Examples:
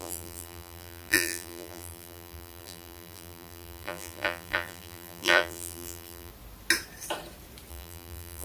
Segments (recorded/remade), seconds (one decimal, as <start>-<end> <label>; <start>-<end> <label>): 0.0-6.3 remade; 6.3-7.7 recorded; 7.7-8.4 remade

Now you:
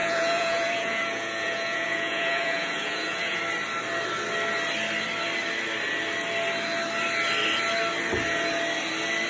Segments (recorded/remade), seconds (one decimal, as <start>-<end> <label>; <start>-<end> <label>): 0.0-3.4 remade; 3.4-9.3 recorded

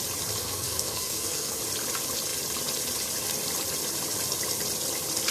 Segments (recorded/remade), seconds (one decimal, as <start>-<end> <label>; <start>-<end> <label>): 0.0-0.4 recorded; 0.4-1.6 remade; 1.6-5.3 recorded

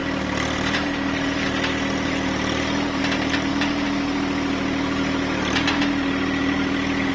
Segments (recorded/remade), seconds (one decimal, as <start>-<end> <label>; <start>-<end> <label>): 0.0-7.1 recorded